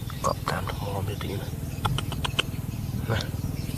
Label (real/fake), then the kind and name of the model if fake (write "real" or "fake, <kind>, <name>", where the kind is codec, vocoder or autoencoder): real